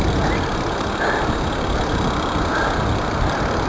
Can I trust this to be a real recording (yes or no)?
yes